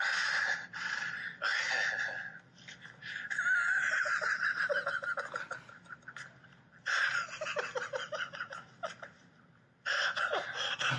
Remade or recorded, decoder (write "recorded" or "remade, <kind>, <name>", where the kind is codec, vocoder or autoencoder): recorded